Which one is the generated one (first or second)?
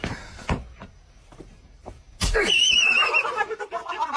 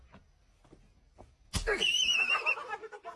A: first